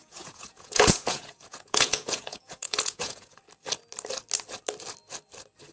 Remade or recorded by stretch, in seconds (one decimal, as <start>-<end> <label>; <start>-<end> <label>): 0.0-3.4 remade; 3.4-5.7 recorded